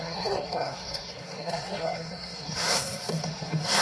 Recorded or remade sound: remade